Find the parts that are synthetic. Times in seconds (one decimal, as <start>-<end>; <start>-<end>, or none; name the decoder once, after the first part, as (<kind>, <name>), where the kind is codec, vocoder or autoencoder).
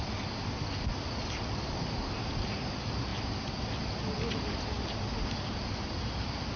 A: none